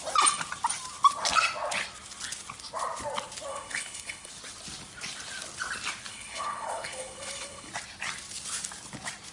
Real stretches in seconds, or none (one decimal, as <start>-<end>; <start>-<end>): 0.0-3.5; 4.3-6.1; 7.7-9.3